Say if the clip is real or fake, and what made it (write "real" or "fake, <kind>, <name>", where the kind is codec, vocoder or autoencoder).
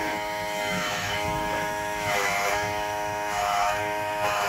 fake, autoencoder, DAC-VAE